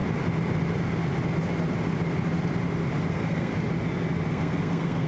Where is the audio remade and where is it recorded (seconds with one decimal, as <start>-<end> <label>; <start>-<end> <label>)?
0.0-3.1 recorded; 3.1-3.5 remade; 3.5-4.3 recorded; 4.3-5.1 remade